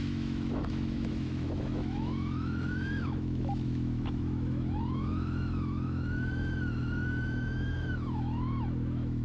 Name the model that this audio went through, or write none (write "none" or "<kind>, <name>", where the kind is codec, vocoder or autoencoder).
autoencoder, DAC-VAE